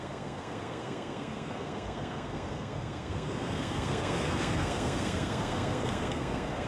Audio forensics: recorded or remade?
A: remade